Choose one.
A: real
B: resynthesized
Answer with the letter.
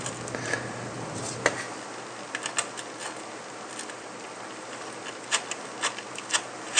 A